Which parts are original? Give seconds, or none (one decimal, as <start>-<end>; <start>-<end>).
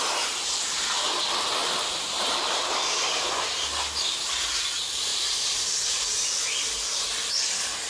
0.0-1.6; 2.6-5.1; 7.3-7.9